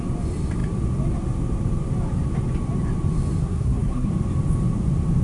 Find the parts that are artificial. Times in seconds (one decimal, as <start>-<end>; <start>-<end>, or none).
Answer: 3.4-4.1